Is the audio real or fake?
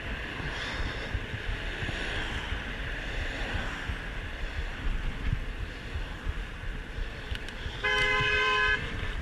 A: fake